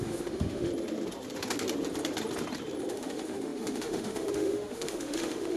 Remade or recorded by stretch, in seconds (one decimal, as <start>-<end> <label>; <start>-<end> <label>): 0.0-0.7 remade; 0.7-2.9 recorded; 2.9-5.6 remade